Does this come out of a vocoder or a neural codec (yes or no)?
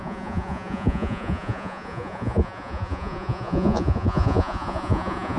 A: yes